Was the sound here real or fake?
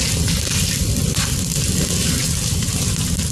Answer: real